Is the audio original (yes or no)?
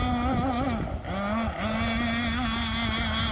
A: yes